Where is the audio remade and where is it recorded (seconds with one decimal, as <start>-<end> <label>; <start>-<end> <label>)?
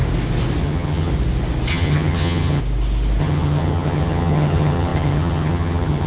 0.0-0.6 recorded; 0.6-1.1 remade; 1.1-1.7 recorded; 1.7-2.6 remade; 2.6-3.2 recorded; 3.2-6.1 remade